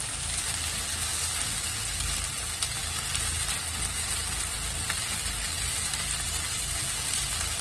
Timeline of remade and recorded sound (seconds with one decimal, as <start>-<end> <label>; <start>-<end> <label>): 0.0-7.6 recorded